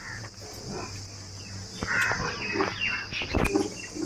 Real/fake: real